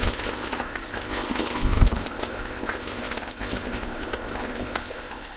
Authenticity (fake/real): fake